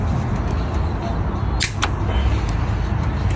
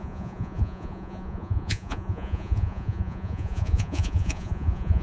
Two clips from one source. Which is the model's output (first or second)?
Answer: second